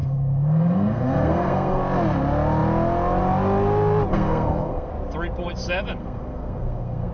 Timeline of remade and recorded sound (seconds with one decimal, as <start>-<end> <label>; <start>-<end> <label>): 0.0-1.8 remade; 1.8-4.1 recorded; 4.1-4.9 remade; 4.9-6.0 recorded; 6.0-7.1 remade